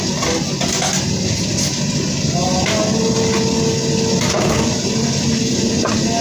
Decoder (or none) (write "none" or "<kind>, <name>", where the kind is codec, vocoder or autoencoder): none